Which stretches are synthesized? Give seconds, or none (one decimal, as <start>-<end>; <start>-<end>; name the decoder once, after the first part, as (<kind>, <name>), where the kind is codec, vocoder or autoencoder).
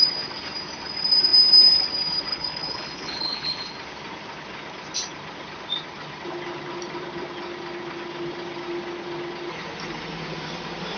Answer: 2.3-3.7 (codec, HILCodec)